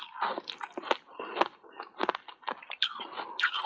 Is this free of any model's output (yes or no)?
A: yes